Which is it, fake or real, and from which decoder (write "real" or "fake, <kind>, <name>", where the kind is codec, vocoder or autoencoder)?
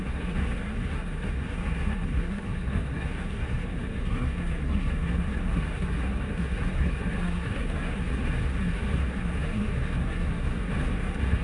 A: fake, codec, SNAC